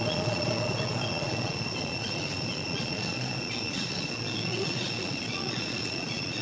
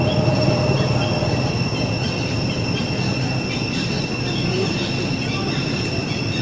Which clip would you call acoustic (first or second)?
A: second